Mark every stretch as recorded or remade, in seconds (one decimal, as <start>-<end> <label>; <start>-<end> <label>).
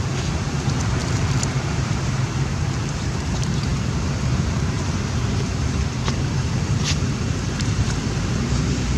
0.0-9.0 remade